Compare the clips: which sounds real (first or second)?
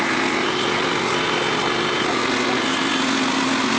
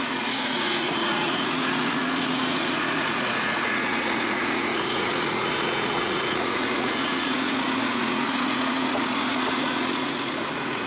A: first